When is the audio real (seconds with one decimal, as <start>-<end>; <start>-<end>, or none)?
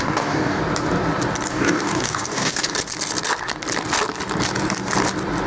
0.6-1.5; 2.7-5.5